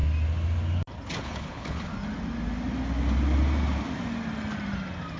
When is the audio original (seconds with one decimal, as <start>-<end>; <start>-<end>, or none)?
0.0-1.2; 1.9-5.2